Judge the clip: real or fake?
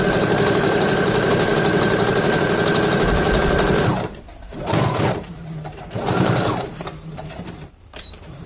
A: fake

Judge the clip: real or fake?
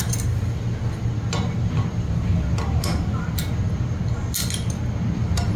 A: real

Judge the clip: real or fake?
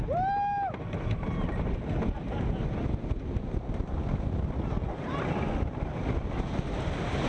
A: real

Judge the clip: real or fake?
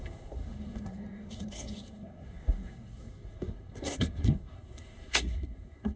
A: fake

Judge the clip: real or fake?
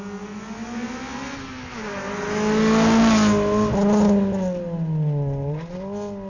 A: real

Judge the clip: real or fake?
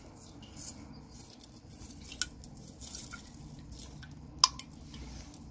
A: real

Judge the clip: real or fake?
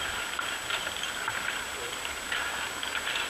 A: real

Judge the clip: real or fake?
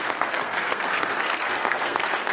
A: fake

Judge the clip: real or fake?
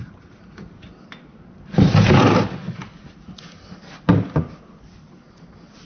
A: real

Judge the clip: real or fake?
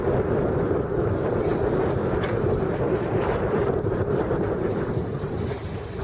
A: fake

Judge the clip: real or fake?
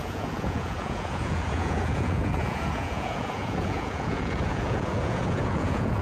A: fake